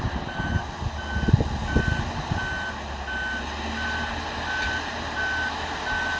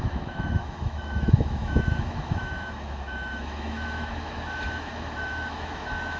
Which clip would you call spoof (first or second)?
second